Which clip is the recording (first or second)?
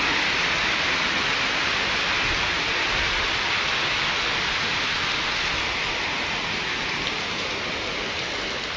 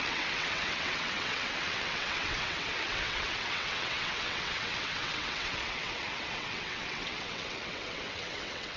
first